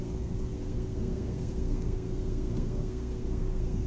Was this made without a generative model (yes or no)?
no